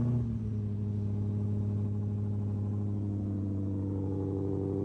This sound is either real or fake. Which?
real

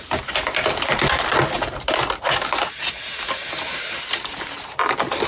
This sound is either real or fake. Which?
real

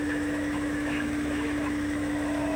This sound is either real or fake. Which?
fake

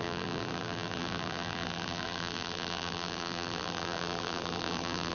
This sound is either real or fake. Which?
fake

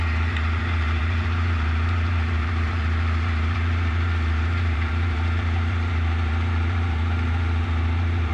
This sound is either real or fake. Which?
fake